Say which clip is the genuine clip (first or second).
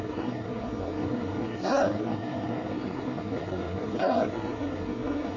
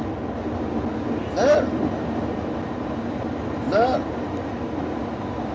second